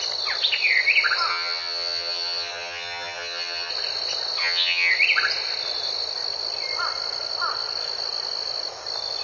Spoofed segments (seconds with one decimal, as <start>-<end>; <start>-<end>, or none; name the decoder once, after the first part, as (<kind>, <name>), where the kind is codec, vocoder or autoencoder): 1.3-3.7 (vocoder, HiFi-GAN); 4.4-4.9